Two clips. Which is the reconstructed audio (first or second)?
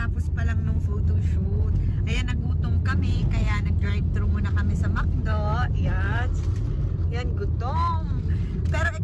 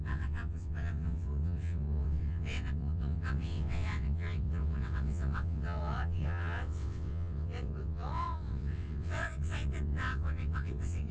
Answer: second